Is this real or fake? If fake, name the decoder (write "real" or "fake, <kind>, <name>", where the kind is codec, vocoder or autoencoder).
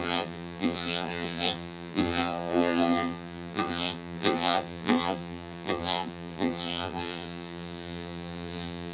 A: fake, vocoder, BigVGAN v2